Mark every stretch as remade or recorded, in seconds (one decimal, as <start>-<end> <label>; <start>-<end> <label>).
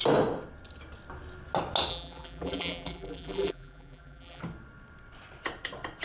0.0-1.9 recorded; 1.9-4.4 remade; 4.4-6.0 recorded